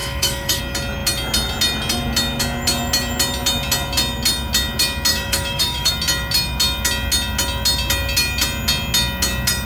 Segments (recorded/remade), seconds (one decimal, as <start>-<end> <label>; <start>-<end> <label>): 0.0-0.6 remade; 0.6-5.1 recorded; 5.1-5.9 remade; 5.9-9.6 recorded